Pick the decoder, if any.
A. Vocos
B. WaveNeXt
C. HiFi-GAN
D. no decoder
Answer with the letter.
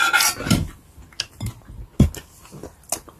D